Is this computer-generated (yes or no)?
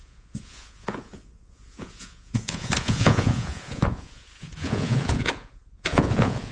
yes